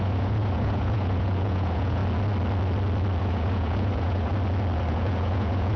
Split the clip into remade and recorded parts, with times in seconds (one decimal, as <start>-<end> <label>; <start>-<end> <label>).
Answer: 0.0-2.0 remade; 2.0-3.2 recorded; 3.2-4.3 remade; 4.3-4.9 recorded; 4.9-5.8 remade